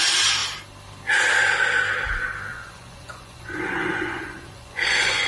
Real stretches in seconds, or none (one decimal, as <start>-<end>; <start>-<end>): 0.0-2.5